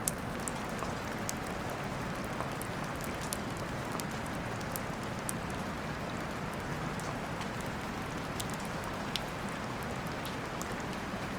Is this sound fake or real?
real